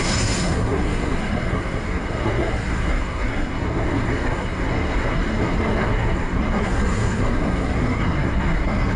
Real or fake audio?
fake